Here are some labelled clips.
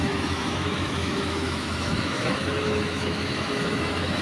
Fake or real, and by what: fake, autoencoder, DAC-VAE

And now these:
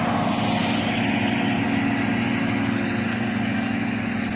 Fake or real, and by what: real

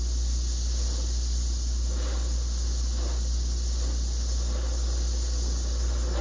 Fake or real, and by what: real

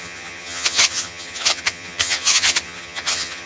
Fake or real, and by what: fake, vocoder, HiFi-GAN